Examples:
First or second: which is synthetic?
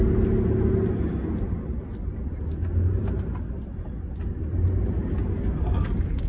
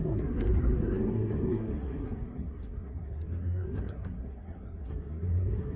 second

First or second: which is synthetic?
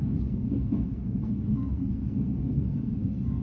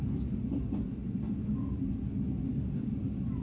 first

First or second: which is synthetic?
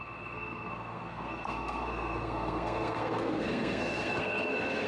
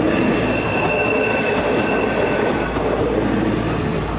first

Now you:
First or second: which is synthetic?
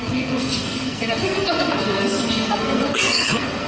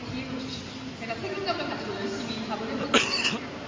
first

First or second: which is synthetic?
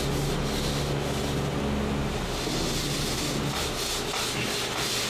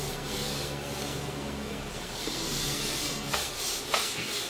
second